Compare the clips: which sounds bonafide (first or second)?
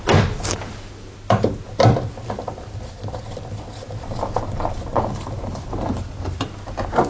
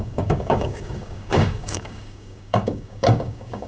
first